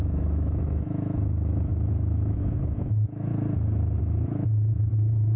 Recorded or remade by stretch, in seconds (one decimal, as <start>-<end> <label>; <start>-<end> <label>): 0.0-3.3 remade; 3.3-4.0 recorded; 4.0-5.4 remade